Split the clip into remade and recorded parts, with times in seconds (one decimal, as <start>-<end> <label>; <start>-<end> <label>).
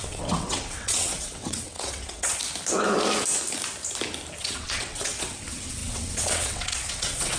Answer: 0.0-2.4 remade; 2.4-4.4 recorded; 4.4-7.4 remade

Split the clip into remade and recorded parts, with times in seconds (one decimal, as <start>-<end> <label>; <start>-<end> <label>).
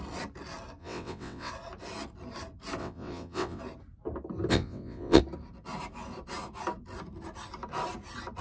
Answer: 0.0-0.8 recorded; 0.8-1.5 remade; 1.5-2.8 recorded; 2.8-3.6 remade; 3.6-4.5 recorded; 4.5-5.2 remade; 5.2-8.4 recorded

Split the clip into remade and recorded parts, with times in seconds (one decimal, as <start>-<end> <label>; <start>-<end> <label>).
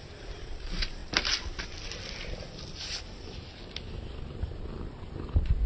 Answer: 0.0-5.7 recorded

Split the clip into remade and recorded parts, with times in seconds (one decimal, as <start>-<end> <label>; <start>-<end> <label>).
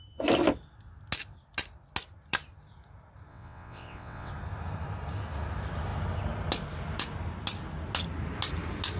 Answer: 0.0-3.3 recorded; 3.3-4.3 remade; 4.3-9.0 recorded